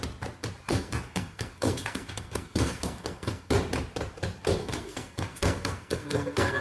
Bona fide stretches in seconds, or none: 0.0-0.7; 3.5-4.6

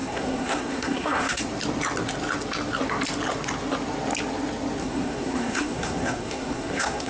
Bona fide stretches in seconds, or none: 1.4-4.8

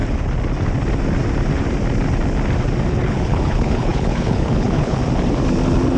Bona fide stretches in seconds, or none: 0.0-2.9; 5.0-6.0

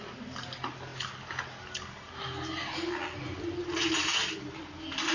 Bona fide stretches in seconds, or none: 0.0-5.1

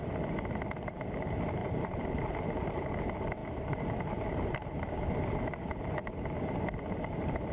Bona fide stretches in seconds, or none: 0.0-1.6; 2.9-3.4; 5.1-7.5

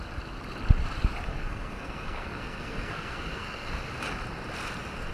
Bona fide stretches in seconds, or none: 0.0-1.3; 3.8-5.1

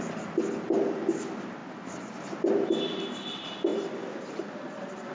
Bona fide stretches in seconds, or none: 0.0-5.1

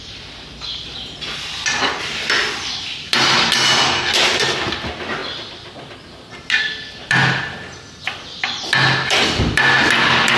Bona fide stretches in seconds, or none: 0.0-10.4